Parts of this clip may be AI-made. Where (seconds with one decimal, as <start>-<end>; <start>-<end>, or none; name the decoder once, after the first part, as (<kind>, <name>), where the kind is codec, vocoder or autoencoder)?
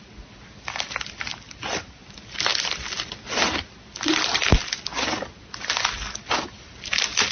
none